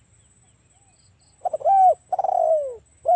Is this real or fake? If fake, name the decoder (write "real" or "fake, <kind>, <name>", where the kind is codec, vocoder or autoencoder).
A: real